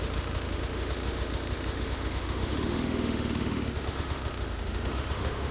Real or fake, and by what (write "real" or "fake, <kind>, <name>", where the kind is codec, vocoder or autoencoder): fake, autoencoder, DAC-VAE